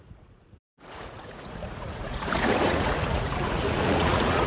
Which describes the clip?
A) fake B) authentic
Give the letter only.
A